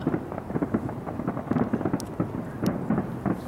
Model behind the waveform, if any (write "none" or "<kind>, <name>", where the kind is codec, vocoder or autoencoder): none